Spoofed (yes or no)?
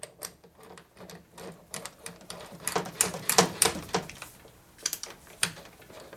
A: yes